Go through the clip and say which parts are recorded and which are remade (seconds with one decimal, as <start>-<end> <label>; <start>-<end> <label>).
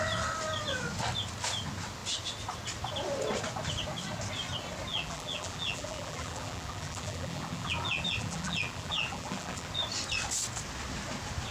0.0-4.9 recorded; 4.9-9.7 remade; 9.7-11.5 recorded